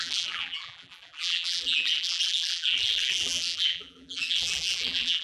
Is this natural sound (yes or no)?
no